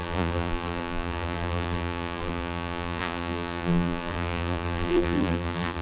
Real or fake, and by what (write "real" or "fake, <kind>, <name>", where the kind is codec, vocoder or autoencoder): fake, vocoder, BigVGAN v2